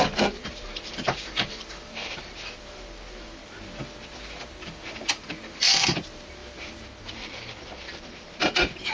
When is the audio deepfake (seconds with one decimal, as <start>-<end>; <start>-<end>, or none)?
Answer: 0.0-3.4; 4.9-8.9